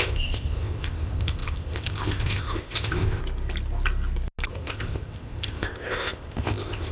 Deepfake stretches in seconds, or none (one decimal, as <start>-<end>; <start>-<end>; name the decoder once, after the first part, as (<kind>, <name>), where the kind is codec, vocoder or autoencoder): 0.0-3.2 (codec, ZipCodec); 4.5-6.9